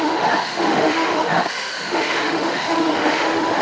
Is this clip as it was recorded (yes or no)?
no